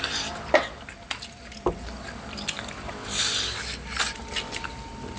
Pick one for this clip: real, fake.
real